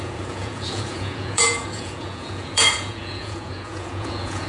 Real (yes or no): no